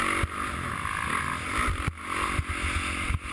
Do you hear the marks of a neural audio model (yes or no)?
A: no